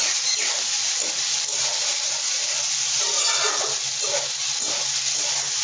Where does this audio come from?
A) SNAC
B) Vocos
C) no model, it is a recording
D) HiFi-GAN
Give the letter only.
C